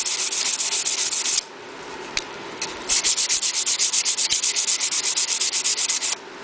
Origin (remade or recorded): recorded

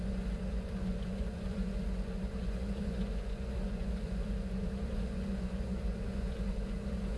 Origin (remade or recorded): remade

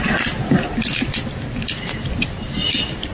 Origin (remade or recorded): recorded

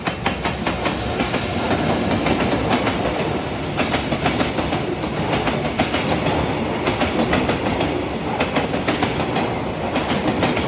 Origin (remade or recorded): recorded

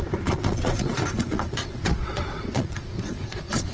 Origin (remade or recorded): remade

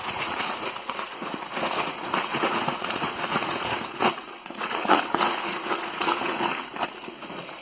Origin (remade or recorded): remade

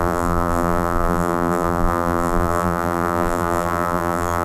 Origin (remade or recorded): remade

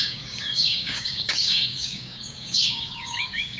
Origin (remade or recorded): remade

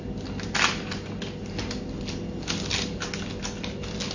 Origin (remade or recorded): recorded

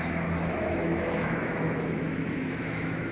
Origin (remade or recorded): remade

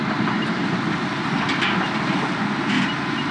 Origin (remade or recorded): recorded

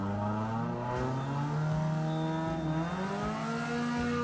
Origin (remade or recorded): recorded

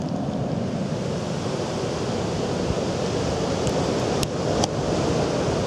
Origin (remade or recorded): recorded